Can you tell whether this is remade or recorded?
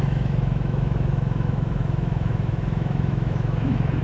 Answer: remade